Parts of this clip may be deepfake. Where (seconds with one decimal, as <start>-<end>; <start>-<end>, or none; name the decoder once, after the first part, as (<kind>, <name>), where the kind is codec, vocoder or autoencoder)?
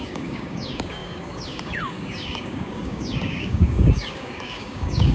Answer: 0.0-5.1 (codec, DAC)